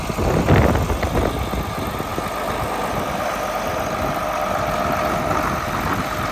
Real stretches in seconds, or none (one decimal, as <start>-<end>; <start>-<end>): 0.0-6.3

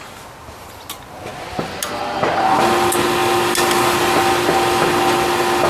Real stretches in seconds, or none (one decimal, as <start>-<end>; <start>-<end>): 0.0-5.7

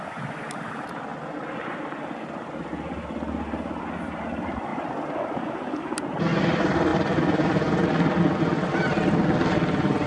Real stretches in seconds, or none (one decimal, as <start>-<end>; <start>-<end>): 0.0-6.9; 8.2-10.1

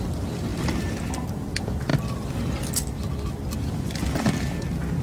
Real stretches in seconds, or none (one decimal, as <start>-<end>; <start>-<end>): 0.0-5.0

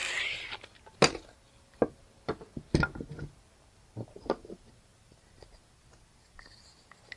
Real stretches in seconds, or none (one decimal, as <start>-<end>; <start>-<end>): 0.0-7.2

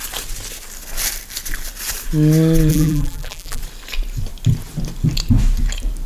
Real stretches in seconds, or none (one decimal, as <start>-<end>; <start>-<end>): 0.0-2.7; 3.6-6.1

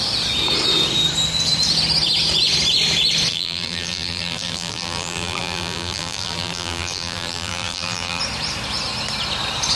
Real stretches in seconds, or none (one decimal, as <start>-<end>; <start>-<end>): 0.0-3.3; 8.2-9.8